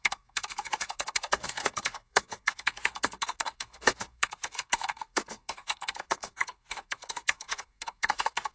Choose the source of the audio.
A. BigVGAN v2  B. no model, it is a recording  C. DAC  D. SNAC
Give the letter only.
D